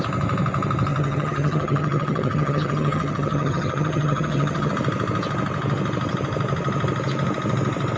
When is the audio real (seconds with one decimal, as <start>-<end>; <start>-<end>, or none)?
0.0-0.9; 4.7-8.0